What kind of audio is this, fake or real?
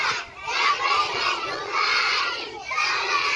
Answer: fake